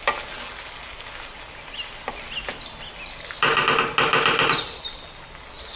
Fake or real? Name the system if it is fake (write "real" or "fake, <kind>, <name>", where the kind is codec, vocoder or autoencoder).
real